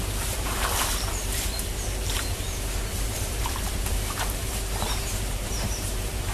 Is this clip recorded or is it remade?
remade